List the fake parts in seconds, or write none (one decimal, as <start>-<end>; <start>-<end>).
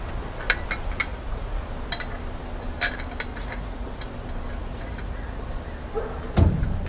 1.1-1.6; 3.3-4.0; 4.6-5.5